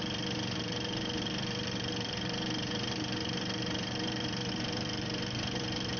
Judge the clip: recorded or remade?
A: remade